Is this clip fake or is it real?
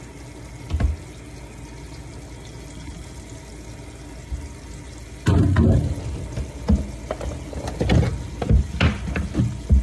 real